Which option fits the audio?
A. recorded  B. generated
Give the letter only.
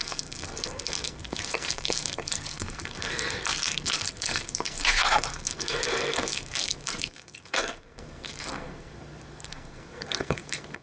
B